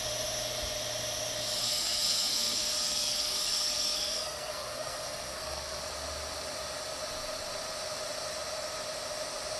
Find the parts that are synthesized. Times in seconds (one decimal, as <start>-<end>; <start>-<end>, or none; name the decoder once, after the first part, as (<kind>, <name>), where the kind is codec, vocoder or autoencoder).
1.6-5.8 (codec, SNAC)